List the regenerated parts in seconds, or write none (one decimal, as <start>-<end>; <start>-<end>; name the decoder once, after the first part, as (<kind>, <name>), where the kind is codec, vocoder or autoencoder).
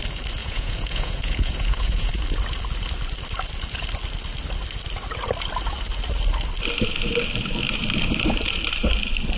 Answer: 0.4-2.1 (vocoder, Vocos)